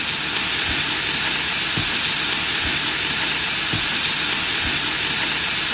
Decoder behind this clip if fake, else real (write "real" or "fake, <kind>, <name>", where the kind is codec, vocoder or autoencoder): real